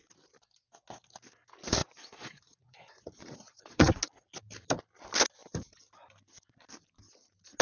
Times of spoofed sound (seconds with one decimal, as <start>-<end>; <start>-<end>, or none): 1.8-4.0